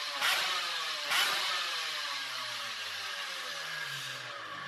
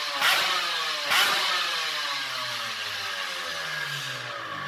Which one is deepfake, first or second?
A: first